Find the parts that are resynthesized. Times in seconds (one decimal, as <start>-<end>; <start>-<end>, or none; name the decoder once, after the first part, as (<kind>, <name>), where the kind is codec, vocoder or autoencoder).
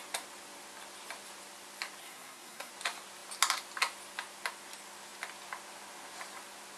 2.0-2.7 (codec, SNAC)